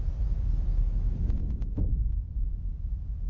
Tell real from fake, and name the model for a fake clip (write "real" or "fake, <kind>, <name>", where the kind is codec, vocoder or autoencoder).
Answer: real